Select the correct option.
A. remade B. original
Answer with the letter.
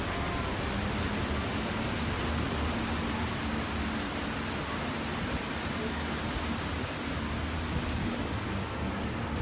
B